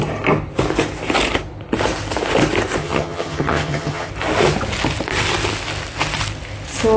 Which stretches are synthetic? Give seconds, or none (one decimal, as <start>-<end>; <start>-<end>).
2.8-4.1